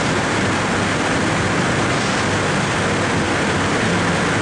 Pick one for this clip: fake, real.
real